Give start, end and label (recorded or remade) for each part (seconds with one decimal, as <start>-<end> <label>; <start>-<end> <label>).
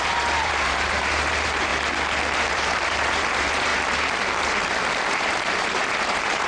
0.0-1.7 remade; 1.7-2.5 recorded; 2.5-3.7 remade; 3.7-5.1 recorded; 5.1-6.5 remade